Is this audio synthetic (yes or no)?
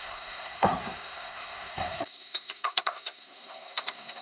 yes